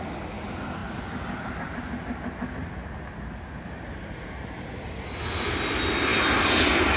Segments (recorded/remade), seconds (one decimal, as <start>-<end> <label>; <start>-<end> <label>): 0.0-7.0 recorded